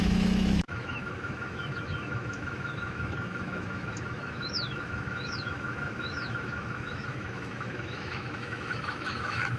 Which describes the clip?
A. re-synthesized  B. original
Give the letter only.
A